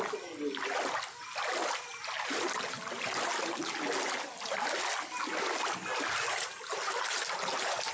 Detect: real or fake real